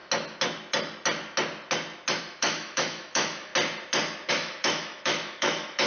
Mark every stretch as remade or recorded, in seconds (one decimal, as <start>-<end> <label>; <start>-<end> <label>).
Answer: 0.0-2.2 recorded; 2.2-3.5 remade; 3.5-4.3 recorded; 4.3-5.9 remade